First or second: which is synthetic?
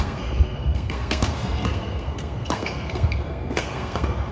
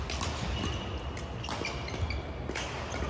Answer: first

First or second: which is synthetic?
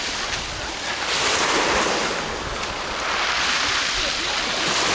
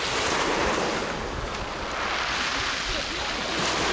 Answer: first